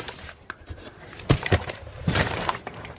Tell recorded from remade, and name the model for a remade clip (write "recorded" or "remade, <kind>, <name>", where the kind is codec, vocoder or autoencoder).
remade, vocoder, BigVGAN v2